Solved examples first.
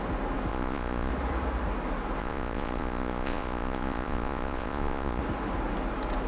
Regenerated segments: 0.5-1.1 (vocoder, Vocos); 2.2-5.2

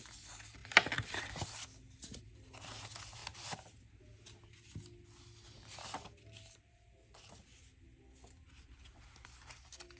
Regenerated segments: none

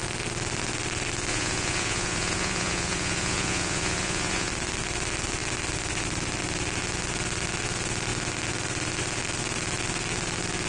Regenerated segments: 1.3-4.5 (vocoder, Vocos)